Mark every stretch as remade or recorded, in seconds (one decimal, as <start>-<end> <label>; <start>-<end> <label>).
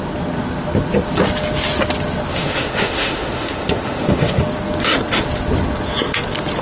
0.0-2.3 recorded; 2.3-4.4 remade; 4.4-6.6 recorded